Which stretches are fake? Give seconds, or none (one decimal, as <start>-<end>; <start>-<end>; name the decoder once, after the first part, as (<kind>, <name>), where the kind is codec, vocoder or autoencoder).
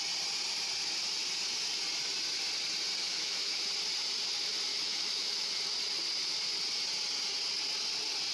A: 3.0-3.7 (autoencoder, DAC-VAE); 4.7-5.5